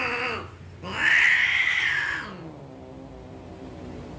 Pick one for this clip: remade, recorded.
recorded